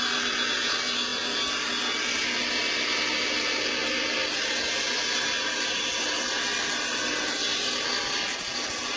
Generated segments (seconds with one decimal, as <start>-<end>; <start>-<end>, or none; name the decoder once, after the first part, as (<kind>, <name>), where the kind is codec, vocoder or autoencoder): none